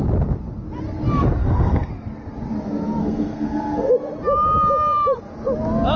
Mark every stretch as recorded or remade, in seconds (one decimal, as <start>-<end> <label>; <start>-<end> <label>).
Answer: 0.0-1.4 recorded; 1.4-1.9 remade; 1.9-3.0 recorded; 3.0-3.9 remade; 3.9-6.0 recorded

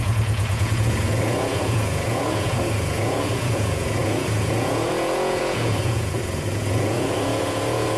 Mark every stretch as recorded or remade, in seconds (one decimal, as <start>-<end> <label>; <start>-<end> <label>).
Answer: 0.0-8.0 remade

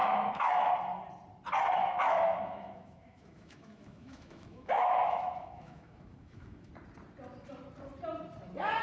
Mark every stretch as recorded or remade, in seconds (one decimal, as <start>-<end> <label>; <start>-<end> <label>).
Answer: 0.0-0.7 remade; 0.7-1.8 recorded; 1.8-6.7 remade; 6.7-8.8 recorded

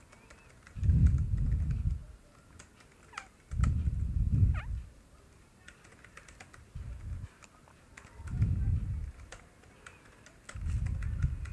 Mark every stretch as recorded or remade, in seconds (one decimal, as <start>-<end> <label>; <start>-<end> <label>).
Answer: 0.0-11.5 recorded

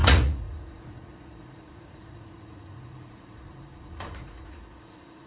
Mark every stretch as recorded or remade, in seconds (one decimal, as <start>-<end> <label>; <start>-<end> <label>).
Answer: 0.0-5.3 remade